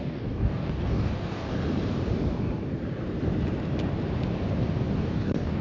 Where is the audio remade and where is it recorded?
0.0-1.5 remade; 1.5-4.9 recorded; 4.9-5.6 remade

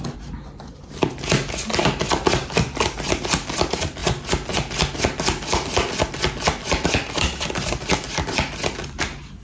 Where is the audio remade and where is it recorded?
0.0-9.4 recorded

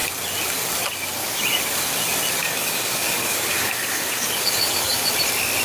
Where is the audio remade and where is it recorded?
0.0-1.2 recorded; 1.2-1.8 remade; 1.8-2.4 recorded; 2.4-5.1 remade; 5.1-5.6 recorded